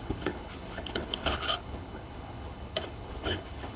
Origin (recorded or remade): remade